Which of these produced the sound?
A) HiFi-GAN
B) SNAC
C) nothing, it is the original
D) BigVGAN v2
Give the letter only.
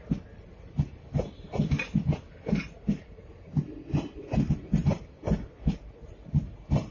C